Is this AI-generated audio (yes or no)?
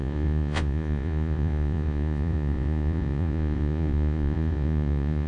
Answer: yes